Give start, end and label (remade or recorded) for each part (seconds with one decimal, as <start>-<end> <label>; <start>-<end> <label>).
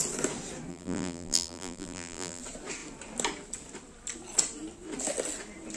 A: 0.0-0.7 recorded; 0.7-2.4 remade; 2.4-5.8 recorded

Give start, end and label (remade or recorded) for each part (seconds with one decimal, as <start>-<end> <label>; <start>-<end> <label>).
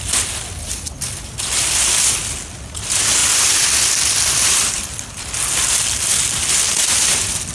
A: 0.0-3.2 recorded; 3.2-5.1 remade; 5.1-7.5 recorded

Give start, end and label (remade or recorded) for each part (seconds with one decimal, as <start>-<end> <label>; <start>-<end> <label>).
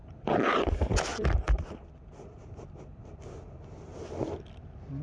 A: 0.0-0.7 remade; 0.7-1.1 recorded; 1.1-3.3 remade; 3.3-5.0 recorded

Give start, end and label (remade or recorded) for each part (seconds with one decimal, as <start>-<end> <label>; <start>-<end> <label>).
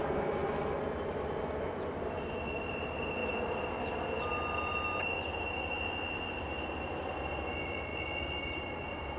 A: 0.0-3.2 remade; 3.2-6.7 recorded; 6.7-9.2 remade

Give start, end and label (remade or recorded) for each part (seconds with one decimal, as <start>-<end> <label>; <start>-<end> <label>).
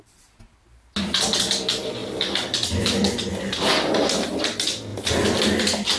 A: 0.0-2.0 recorded; 2.0-3.3 remade; 3.3-6.0 recorded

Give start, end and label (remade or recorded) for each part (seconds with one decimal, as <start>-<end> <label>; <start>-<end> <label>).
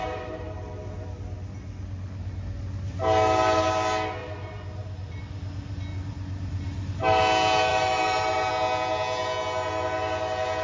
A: 0.0-4.2 recorded; 4.2-5.2 remade; 5.2-5.9 recorded; 5.9-7.0 remade; 7.0-7.7 recorded; 7.7-8.5 remade; 8.5-10.6 recorded